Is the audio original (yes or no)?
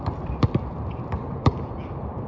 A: yes